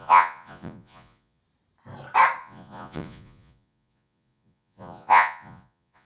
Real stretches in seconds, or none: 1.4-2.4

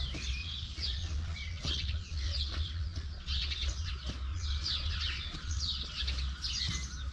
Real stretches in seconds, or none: 0.0-0.4; 3.9-4.3; 6.0-7.1

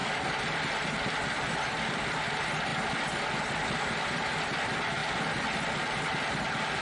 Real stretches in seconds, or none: 0.0-6.8

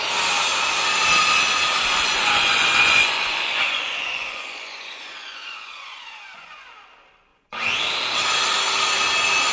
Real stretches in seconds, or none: 0.0-1.9; 6.7-7.3; 7.8-9.5

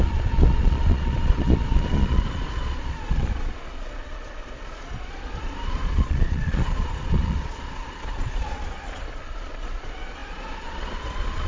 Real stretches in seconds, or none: none

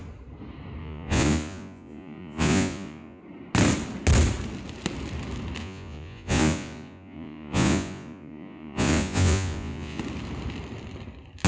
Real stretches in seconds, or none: 0.0-0.8; 3.2-5.6; 10.0-11.5

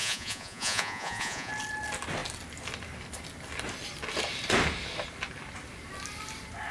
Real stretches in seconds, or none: 1.5-6.7